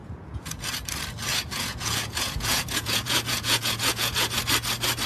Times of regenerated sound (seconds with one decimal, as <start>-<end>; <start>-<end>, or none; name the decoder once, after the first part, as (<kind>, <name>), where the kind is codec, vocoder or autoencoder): 0.0-0.6 (vocoder, Vocos); 1.3-4.4